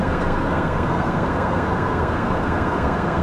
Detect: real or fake fake